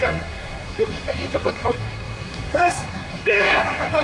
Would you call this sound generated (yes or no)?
yes